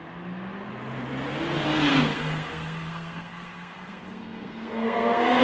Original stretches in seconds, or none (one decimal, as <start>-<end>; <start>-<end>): 0.0-1.9